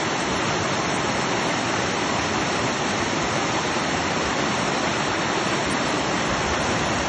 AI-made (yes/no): no